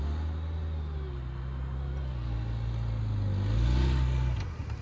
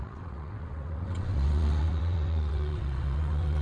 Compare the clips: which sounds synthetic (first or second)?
second